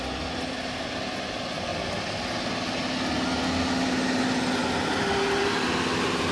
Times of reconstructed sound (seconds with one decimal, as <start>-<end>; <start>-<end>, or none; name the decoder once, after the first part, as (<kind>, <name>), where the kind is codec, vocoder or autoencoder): none